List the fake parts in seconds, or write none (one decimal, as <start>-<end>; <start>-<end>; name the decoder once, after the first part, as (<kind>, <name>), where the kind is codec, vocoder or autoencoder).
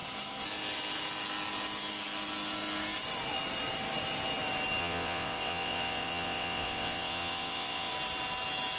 4.8-7.9 (vocoder, WaveNeXt)